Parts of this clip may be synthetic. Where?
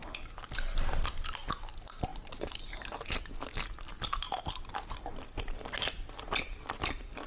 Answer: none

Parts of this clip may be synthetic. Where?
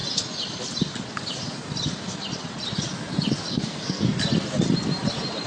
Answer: 3.5-4.0 (codec, SNAC)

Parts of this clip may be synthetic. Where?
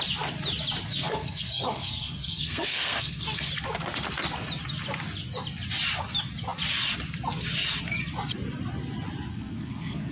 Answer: 0.9-3.5 (codec, SNAC); 9.3-10.1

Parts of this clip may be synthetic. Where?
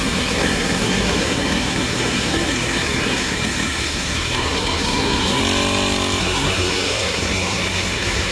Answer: 0.0-5.4 (codec, SNAC); 6.2-8.3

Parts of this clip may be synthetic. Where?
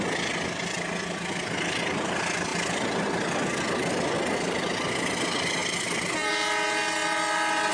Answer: none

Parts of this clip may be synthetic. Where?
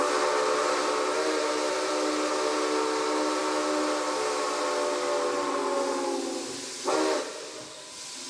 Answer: none